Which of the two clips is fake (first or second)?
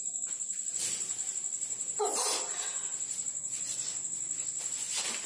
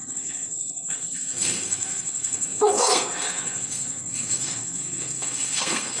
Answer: second